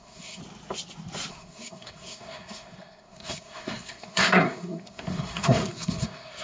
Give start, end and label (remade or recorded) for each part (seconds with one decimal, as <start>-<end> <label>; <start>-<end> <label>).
0.0-0.4 remade; 0.4-1.3 recorded; 1.3-6.4 remade